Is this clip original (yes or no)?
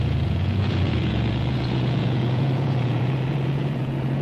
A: no